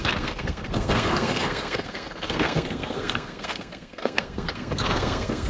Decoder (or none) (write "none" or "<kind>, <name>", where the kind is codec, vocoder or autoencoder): codec, SNAC